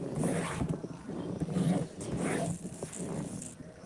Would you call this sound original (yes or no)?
yes